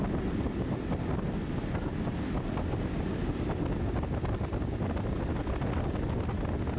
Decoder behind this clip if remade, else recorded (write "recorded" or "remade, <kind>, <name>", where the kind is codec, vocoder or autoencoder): recorded